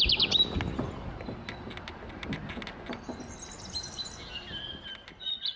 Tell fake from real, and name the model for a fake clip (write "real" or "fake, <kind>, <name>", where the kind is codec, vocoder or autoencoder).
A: real